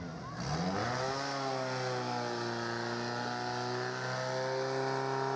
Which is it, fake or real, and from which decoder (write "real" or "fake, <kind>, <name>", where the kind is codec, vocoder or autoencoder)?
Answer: real